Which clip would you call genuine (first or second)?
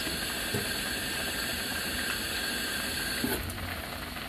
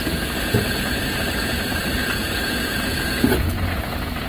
first